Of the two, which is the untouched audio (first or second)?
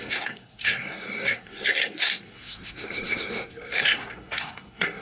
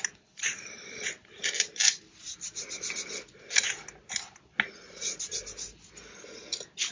second